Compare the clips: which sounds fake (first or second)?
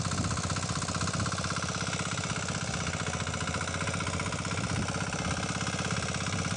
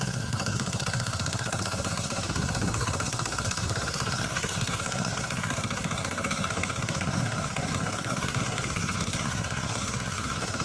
second